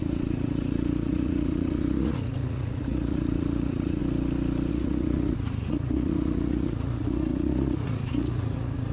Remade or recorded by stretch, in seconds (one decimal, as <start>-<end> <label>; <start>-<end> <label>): 0.0-4.0 remade; 4.0-4.7 recorded; 4.7-8.9 remade